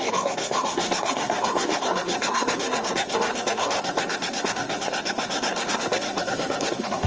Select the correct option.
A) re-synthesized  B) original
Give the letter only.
A